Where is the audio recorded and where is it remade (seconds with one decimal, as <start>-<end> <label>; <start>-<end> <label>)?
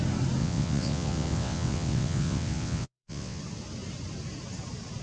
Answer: 0.0-0.4 recorded; 0.4-3.4 remade; 3.4-5.0 recorded